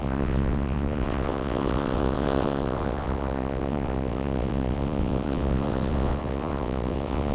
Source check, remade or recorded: remade